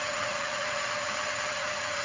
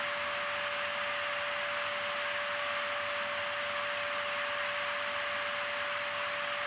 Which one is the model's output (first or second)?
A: first